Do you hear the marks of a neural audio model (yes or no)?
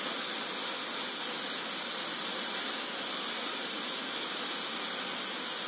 no